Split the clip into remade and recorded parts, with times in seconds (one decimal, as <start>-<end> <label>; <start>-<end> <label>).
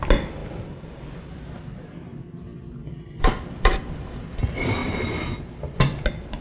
0.0-0.4 recorded; 0.4-4.2 remade; 4.2-6.4 recorded